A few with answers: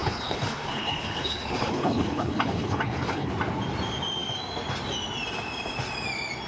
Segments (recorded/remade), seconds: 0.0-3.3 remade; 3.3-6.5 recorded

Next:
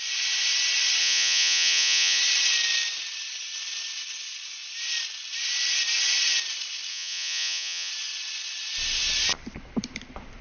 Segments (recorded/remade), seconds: 0.0-1.0 recorded; 1.0-2.2 remade; 2.2-6.9 recorded; 6.9-7.9 remade; 7.9-10.4 recorded

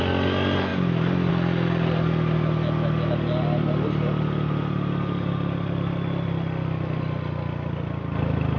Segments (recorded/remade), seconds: 0.0-8.6 recorded